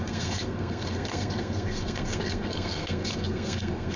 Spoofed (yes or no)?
yes